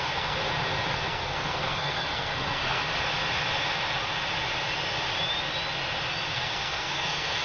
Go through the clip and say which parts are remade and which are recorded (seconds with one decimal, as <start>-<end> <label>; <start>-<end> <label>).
0.0-0.4 remade; 0.4-0.9 recorded; 0.9-2.8 remade; 2.8-6.3 recorded; 6.3-7.4 remade

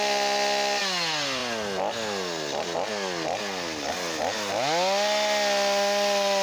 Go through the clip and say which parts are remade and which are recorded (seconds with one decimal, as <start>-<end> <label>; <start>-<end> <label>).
0.0-6.4 recorded

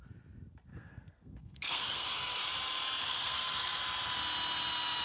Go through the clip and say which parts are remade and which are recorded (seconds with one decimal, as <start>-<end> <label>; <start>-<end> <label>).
0.0-0.7 recorded; 0.7-2.4 remade; 2.4-3.0 recorded; 3.0-3.8 remade; 3.8-5.0 recorded

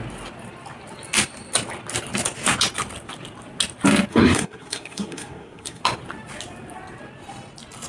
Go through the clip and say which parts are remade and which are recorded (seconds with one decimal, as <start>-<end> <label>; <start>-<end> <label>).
0.0-4.1 recorded; 4.1-5.8 remade; 5.8-7.9 recorded

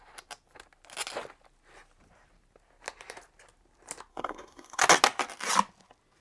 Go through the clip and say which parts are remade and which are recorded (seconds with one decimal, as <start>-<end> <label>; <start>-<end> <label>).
0.0-4.1 recorded; 4.1-4.8 remade; 4.8-6.2 recorded

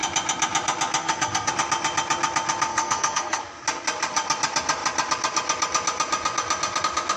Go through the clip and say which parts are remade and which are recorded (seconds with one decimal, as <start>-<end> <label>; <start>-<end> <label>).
0.0-1.0 recorded; 1.0-1.5 remade; 1.5-2.7 recorded; 2.7-3.4 remade; 3.4-7.2 recorded

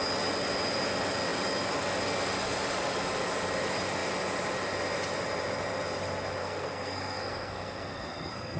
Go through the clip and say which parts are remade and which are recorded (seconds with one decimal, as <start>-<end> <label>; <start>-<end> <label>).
0.0-6.4 recorded; 6.4-8.6 remade

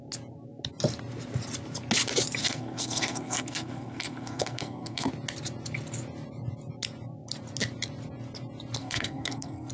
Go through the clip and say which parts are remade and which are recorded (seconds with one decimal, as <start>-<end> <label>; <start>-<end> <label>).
0.0-2.4 recorded; 2.4-5.1 remade; 5.1-8.8 recorded; 8.8-9.7 remade